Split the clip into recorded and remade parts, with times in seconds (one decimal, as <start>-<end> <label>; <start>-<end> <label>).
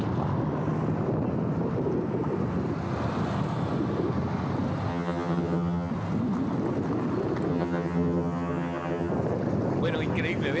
0.0-4.9 recorded; 4.9-5.9 remade; 5.9-7.5 recorded; 7.5-9.1 remade; 9.1-10.6 recorded